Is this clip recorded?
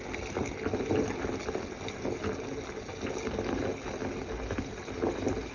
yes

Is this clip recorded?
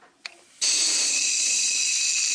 yes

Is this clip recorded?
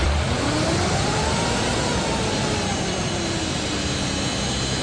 no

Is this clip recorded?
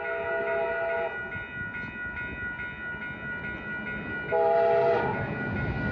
yes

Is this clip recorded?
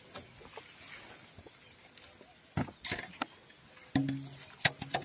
yes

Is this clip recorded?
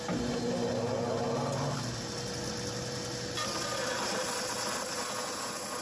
yes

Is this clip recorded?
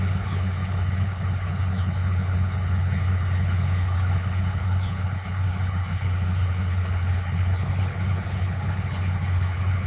no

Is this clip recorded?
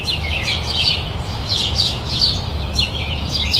no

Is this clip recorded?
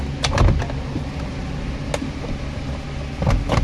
yes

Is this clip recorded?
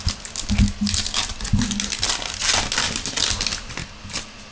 yes